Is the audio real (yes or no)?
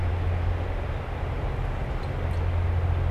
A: yes